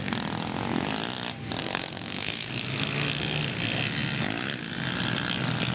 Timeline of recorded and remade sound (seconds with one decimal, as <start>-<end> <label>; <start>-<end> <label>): 0.0-1.6 recorded; 1.6-2.5 remade; 2.5-5.7 recorded